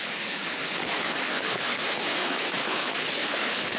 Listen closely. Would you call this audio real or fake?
fake